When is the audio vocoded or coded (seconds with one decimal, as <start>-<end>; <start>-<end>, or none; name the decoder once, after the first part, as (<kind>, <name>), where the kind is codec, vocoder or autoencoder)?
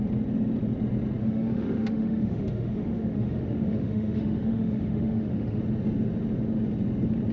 1.2-5.6 (autoencoder, DAC-VAE)